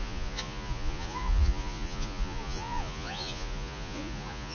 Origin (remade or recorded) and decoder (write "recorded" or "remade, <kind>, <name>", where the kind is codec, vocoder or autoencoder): remade, vocoder, Vocos